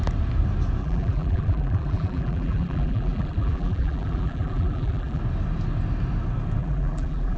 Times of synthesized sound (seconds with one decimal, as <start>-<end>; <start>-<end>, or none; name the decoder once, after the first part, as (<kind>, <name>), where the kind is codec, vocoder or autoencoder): 0.8-5.2 (vocoder, BigVGAN v2); 6.6-7.4